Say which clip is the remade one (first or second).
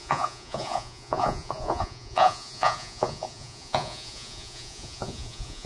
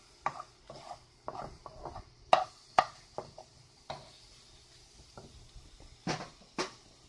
first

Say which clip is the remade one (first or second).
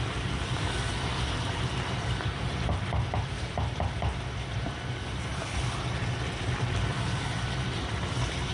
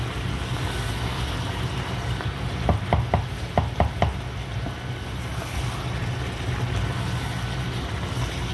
first